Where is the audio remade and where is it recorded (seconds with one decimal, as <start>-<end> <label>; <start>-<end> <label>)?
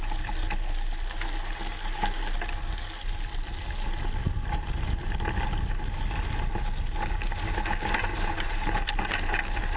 0.0-8.1 recorded; 8.1-8.7 remade; 8.7-9.8 recorded